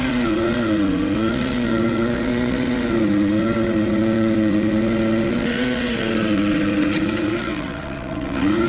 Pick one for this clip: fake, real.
fake